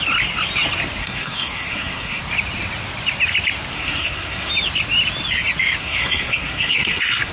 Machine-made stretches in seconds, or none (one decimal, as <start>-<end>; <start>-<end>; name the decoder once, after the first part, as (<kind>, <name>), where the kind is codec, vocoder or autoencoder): 1.0-2.2 (codec, SNAC); 3.7-4.5; 5.8-7.3